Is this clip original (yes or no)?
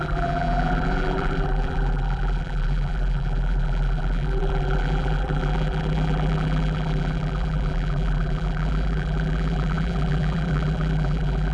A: no